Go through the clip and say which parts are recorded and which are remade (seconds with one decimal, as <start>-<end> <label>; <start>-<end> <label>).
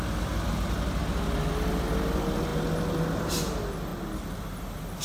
0.0-5.0 recorded